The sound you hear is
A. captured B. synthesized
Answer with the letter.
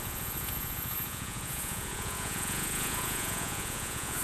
B